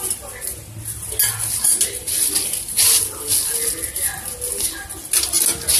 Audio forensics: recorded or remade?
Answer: recorded